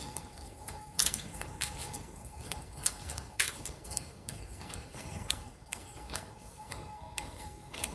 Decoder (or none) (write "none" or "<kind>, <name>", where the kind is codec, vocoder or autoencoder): codec, SNAC